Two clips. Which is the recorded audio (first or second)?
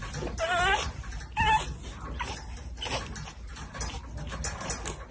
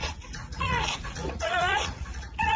first